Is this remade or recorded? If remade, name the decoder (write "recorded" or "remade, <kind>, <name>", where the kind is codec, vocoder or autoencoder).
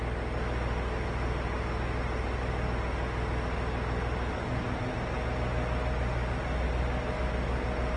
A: recorded